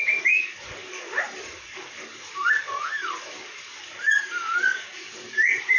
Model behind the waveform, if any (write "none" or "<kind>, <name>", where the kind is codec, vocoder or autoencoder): codec, DAC